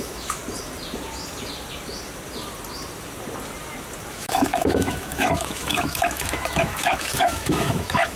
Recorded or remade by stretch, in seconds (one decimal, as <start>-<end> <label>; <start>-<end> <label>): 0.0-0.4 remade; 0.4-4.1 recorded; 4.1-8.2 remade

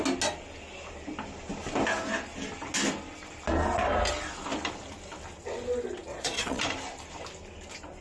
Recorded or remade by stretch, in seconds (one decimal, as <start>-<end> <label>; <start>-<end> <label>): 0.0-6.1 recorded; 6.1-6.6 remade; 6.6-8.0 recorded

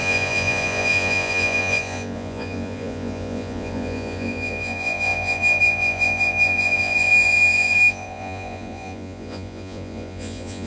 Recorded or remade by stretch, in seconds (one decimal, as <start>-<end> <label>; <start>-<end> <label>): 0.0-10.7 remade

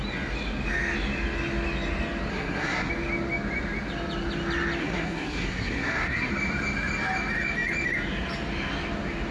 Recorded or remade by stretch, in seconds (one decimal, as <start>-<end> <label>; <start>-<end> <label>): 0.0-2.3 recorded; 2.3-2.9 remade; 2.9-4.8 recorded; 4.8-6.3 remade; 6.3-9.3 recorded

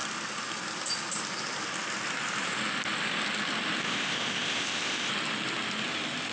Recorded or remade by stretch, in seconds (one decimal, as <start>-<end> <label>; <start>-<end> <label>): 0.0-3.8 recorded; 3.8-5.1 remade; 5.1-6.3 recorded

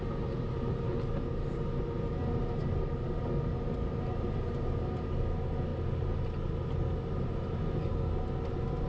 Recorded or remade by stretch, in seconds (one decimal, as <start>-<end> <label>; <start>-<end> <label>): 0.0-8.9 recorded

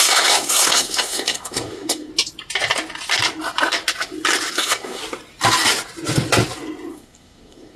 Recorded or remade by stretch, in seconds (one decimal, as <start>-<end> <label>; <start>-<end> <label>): 0.0-2.1 remade; 2.1-4.5 recorded; 4.5-5.0 remade; 5.0-6.9 recorded; 6.9-7.8 remade

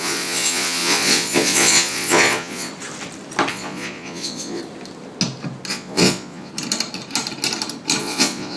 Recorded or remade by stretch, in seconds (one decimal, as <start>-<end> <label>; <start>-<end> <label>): 0.0-2.7 remade; 2.7-3.5 recorded; 3.5-4.6 remade; 4.6-5.7 recorded; 5.7-6.5 remade; 6.5-8.0 recorded; 8.0-8.6 remade